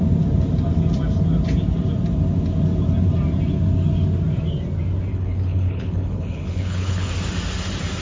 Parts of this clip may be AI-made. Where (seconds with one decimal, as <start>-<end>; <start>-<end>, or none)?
5.1-7.1